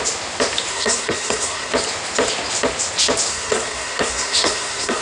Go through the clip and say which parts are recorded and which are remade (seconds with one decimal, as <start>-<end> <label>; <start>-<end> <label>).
0.0-0.7 recorded; 0.7-1.7 remade; 1.7-3.3 recorded; 3.3-5.0 remade